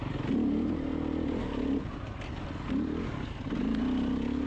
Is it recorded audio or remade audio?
recorded